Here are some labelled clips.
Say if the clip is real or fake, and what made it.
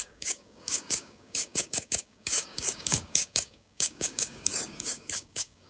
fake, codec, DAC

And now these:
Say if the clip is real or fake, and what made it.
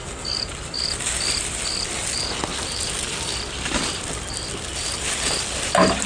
real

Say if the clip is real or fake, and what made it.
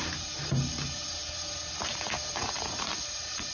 fake, vocoder, BigVGAN v2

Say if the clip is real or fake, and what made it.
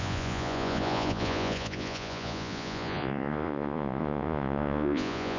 fake, vocoder, Vocos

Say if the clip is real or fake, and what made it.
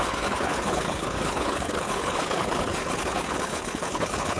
fake, codec, HILCodec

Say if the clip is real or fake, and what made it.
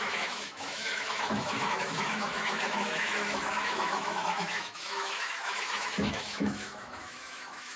fake, autoencoder, DAC-VAE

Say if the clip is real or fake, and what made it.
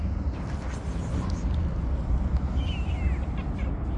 real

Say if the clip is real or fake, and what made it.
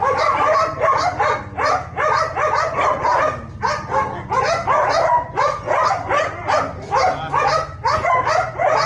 real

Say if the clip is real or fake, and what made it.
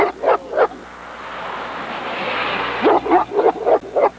real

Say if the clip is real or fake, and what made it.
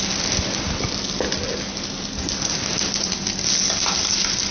real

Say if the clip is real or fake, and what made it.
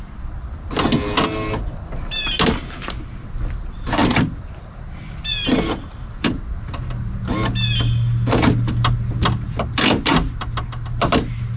real